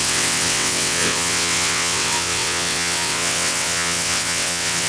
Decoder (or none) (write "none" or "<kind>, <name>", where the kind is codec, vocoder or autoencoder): vocoder, WaveNeXt